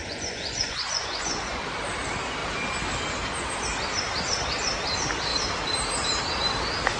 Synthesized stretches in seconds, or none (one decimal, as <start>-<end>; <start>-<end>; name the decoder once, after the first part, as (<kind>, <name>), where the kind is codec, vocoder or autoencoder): 0.0-1.6 (vocoder, Vocos)